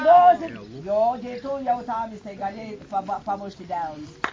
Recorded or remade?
recorded